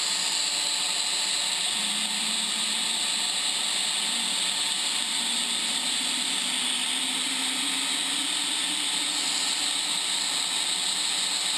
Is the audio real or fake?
real